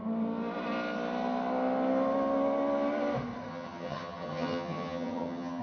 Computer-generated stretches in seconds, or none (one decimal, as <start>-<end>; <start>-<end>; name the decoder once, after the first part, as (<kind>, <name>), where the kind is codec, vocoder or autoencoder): 3.5-5.6 (vocoder, HiFi-GAN)